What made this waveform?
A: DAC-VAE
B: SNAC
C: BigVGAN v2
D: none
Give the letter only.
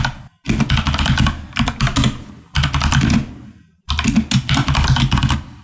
D